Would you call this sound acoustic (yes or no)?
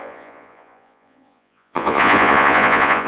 no